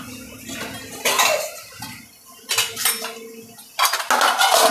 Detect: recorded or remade recorded